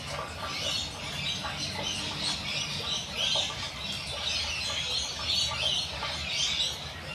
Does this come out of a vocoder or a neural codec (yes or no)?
no